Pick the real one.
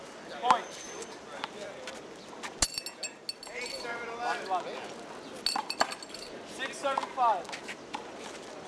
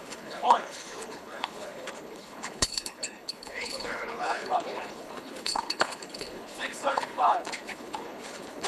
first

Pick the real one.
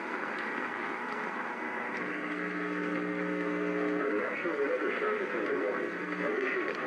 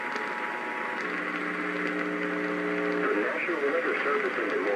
second